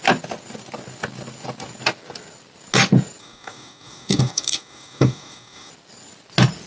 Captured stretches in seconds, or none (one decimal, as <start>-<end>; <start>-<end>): 0.0-3.2; 5.7-6.7